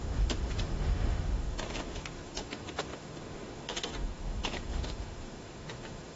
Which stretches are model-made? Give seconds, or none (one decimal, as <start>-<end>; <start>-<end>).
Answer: 0.0-6.2